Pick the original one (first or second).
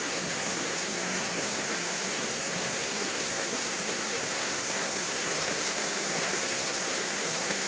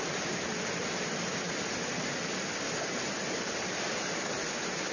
second